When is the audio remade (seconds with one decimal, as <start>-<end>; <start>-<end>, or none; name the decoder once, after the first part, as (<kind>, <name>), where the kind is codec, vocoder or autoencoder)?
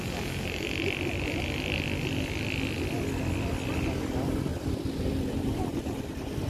4.5-5.8 (vocoder, BigVGAN v2)